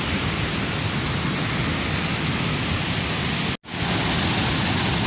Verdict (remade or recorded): recorded